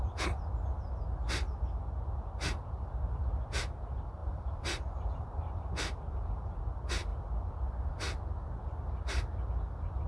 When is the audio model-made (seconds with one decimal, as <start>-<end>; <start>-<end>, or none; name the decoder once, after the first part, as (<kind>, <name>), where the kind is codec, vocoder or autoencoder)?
4.2-5.7 (vocoder, BigVGAN v2)